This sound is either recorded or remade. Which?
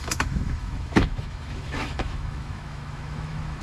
remade